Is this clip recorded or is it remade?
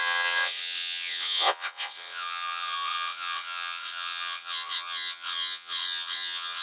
remade